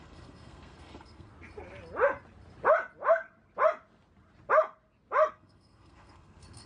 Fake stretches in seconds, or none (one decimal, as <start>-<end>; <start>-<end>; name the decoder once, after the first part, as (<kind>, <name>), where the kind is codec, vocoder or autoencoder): 0.0-1.3 (codec, SNAC); 5.3-6.7